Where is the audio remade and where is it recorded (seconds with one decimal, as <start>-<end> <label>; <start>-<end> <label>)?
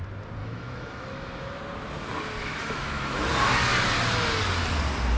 0.0-0.4 recorded; 0.4-1.6 remade; 1.6-2.4 recorded; 2.4-3.3 remade; 3.3-5.2 recorded